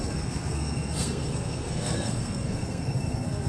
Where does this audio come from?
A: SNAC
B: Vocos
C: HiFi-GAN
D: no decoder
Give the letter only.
A